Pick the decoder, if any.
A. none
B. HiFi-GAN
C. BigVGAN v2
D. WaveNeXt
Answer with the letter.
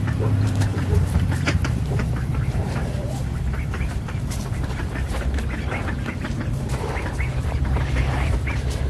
C